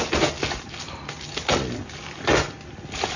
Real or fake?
real